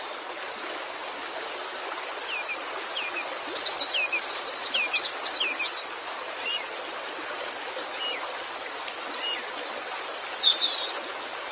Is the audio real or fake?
real